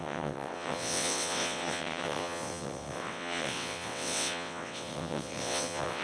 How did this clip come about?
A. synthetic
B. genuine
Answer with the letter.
A